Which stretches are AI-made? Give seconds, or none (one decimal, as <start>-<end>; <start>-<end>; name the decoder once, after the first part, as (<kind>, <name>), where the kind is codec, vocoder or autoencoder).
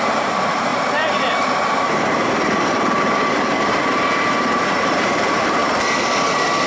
0.0-5.6 (vocoder, BigVGAN v2)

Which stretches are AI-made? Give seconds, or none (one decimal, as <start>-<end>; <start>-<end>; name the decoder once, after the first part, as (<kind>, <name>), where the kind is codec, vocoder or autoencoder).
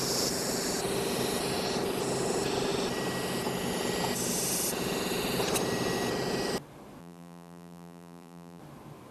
7.0-8.6 (vocoder, BigVGAN v2)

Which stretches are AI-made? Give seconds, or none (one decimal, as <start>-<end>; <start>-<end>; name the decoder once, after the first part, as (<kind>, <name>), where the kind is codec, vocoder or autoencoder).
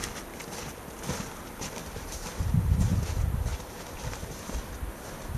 1.8-3.1 (vocoder, BigVGAN v2); 3.5-4.4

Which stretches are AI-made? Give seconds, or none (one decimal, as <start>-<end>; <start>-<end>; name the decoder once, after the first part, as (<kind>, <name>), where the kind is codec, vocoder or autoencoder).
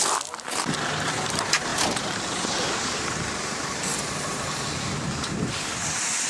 1.7-5.5 (vocoder, BigVGAN v2)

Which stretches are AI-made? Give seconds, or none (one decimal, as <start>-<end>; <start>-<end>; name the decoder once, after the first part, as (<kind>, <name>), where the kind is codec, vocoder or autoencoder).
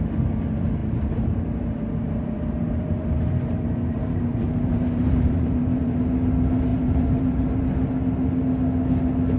0.8-6.1 (vocoder, BigVGAN v2); 6.7-7.6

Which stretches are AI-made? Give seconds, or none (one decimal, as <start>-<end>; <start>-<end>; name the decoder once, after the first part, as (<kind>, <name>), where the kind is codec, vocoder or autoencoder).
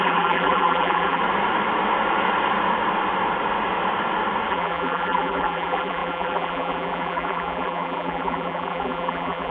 0.0-1.2 (vocoder, BigVGAN v2); 4.5-9.5